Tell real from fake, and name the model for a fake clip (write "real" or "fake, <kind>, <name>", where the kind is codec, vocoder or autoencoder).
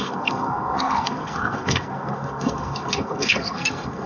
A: fake, codec, SNAC